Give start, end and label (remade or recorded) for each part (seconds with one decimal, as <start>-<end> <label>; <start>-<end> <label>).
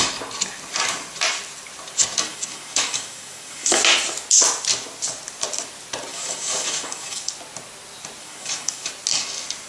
0.0-2.3 recorded; 2.3-3.8 remade; 3.8-6.1 recorded; 6.1-7.3 remade; 7.3-8.2 recorded; 8.2-8.9 remade; 8.9-9.7 recorded